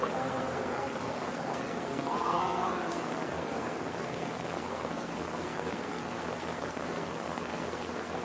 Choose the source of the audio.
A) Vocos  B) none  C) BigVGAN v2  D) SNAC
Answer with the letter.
D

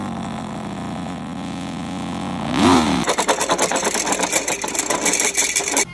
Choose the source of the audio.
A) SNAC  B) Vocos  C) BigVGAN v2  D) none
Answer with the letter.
D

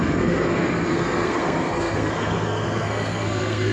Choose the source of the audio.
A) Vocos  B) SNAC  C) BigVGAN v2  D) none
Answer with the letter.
B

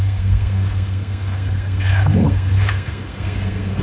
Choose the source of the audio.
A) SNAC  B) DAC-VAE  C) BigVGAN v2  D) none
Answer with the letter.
A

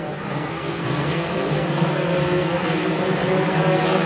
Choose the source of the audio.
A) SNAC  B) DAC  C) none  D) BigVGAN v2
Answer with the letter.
A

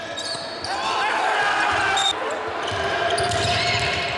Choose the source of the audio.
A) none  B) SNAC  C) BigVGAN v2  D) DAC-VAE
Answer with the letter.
A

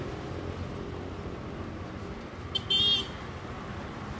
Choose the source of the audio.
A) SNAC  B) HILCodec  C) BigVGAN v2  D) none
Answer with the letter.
D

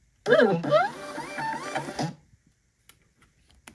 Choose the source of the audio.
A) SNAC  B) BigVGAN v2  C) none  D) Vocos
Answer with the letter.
C